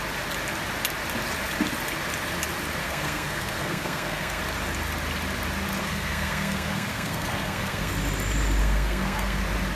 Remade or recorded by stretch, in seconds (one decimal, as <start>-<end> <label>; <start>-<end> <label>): 0.0-2.8 recorded; 2.8-4.4 remade; 4.4-5.8 recorded; 5.8-7.9 remade; 7.9-8.6 recorded; 8.6-9.4 remade; 9.4-9.8 recorded